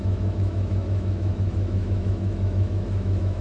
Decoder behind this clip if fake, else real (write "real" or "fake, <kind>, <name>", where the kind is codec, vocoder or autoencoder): fake, autoencoder, DAC-VAE